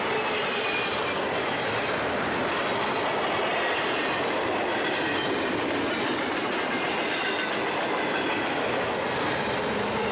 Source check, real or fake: real